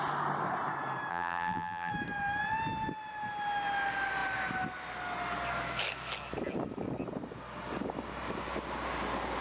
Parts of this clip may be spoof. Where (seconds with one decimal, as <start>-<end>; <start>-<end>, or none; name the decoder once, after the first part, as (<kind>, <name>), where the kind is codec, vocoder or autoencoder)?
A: 1.1-1.9 (vocoder, BigVGAN v2)